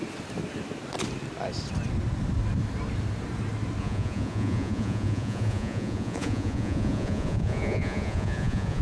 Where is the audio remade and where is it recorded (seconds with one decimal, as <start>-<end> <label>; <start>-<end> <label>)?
0.0-3.8 recorded; 3.8-8.8 remade